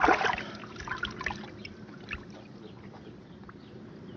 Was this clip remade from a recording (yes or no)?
yes